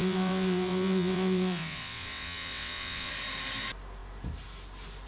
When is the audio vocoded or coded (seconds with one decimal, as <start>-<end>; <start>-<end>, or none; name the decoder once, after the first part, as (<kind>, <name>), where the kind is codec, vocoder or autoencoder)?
0.0-3.1 (vocoder, WaveNeXt)